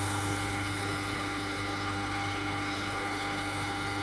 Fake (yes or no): yes